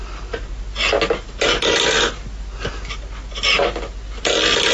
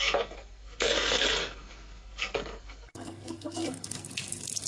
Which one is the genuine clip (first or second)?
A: first